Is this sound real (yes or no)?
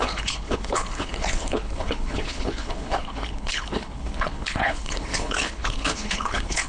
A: no